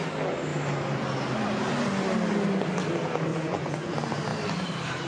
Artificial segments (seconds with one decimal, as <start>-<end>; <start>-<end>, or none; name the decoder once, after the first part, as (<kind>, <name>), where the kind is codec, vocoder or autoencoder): 3.3-3.9 (vocoder, Vocos)